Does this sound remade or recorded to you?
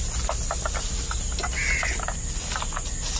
recorded